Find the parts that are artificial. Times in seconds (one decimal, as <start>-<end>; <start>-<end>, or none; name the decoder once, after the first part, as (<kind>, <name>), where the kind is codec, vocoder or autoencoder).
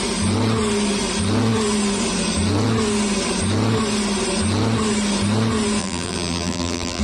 5.8-7.0 (vocoder, BigVGAN v2)